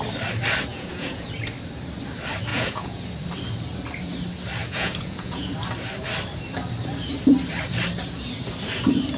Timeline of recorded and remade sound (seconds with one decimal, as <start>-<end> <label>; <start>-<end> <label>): 0.0-0.7 recorded; 0.7-1.3 remade; 1.3-2.5 recorded; 2.5-3.0 remade; 3.0-4.6 recorded; 4.6-5.5 remade; 5.5-9.2 recorded